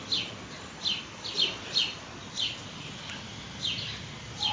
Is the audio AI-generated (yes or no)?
no